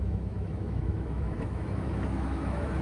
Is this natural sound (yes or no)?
no